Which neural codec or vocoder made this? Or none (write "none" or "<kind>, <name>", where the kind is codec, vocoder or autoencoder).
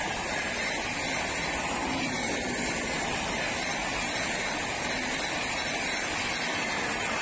none